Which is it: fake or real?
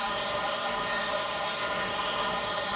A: fake